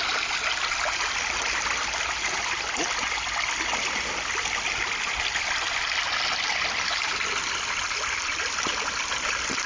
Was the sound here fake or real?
real